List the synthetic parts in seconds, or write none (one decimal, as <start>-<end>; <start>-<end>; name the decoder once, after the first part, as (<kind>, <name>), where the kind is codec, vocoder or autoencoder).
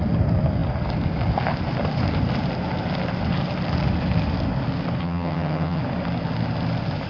5.0-5.8 (vocoder, HiFi-GAN)